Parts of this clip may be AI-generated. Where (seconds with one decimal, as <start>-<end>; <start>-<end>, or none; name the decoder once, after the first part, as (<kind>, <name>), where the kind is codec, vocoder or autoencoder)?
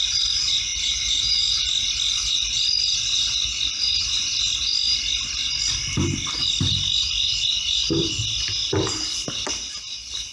0.7-1.6 (vocoder, BigVGAN v2)